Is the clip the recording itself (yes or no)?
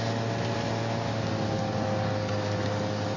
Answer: yes